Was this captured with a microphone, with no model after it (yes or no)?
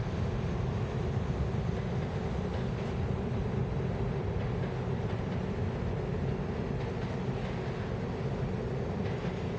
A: yes